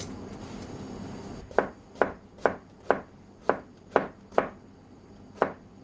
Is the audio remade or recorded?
recorded